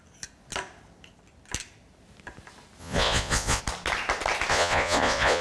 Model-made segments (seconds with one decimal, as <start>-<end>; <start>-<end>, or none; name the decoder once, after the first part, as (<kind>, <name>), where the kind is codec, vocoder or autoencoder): 2.8-3.6 (vocoder, Vocos); 4.5-5.4